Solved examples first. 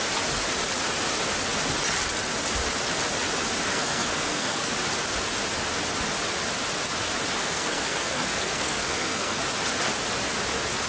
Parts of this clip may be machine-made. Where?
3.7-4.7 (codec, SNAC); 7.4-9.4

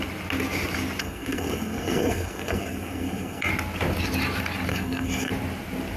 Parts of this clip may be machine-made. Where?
1.0-3.5 (codec, SNAC); 4.7-5.3

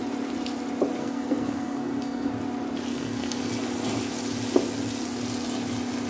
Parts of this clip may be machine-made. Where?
1.0-2.3 (codec, SNAC); 2.9-3.4

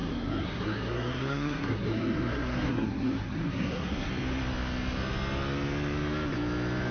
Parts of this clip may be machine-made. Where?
0.0-4.1 (codec, SNAC)

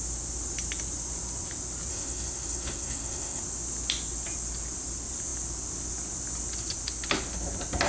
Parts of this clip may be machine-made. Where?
1.9-3.4 (codec, SNAC)

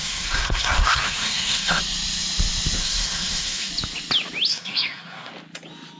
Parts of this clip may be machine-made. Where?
0.0-1.8 (codec, SNAC); 2.8-3.7; 4.5-5.3